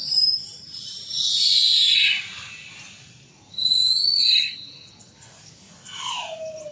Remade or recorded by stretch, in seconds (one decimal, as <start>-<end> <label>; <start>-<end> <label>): 0.0-6.7 recorded